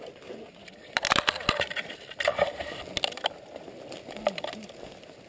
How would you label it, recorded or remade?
recorded